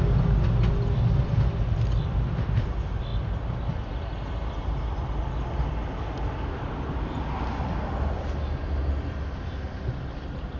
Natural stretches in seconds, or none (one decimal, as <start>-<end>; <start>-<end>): 0.0-10.6